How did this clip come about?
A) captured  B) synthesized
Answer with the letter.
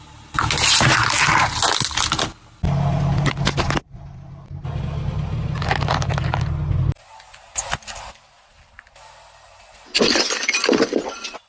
A